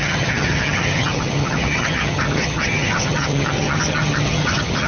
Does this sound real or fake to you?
fake